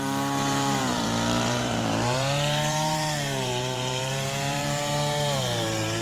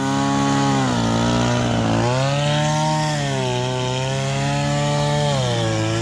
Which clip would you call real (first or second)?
second